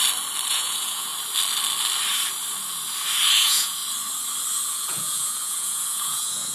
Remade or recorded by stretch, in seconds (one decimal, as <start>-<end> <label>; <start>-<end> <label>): 0.0-0.5 recorded; 0.5-1.1 remade; 1.1-3.3 recorded; 3.3-3.8 remade; 3.8-4.7 recorded; 4.7-6.5 remade